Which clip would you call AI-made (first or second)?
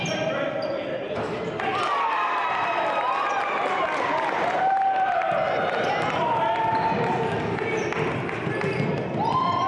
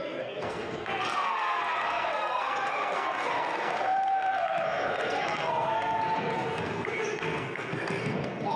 second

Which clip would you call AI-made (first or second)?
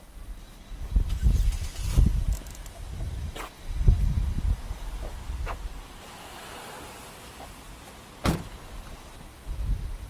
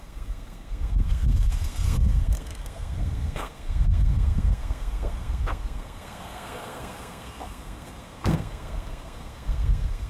second